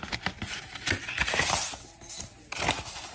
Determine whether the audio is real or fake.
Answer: real